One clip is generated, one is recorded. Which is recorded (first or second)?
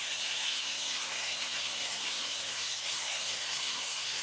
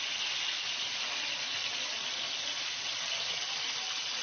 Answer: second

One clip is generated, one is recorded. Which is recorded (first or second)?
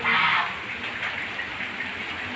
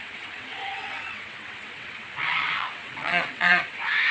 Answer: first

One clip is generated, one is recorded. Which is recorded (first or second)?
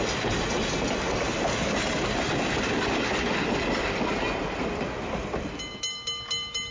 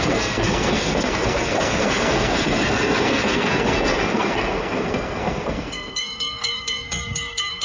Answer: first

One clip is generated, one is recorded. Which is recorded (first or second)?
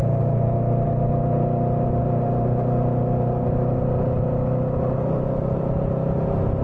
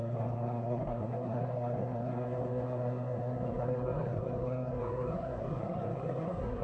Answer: first